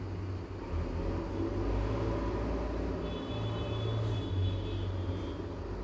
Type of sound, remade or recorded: recorded